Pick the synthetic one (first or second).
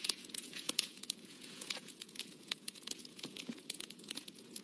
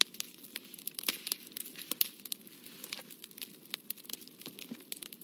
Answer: first